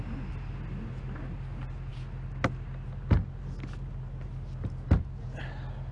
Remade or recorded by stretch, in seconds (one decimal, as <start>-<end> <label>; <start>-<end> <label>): 0.0-5.9 recorded